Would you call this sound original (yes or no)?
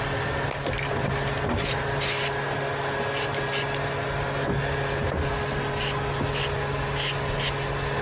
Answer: yes